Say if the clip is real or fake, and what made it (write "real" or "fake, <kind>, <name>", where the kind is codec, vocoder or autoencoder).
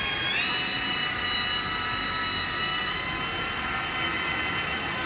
real